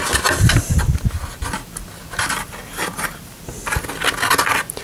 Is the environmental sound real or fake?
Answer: real